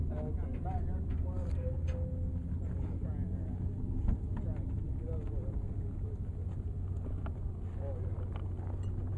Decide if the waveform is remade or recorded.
recorded